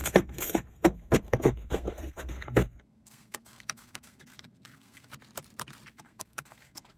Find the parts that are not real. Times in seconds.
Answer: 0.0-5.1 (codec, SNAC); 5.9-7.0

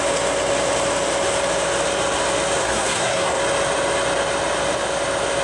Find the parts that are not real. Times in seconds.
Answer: 2.6-3.4 (codec, SNAC)